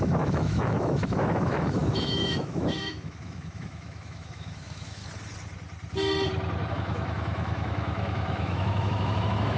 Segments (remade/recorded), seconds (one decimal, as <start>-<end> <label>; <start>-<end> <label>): 0.0-5.0 remade; 5.0-6.7 recorded; 6.7-9.6 remade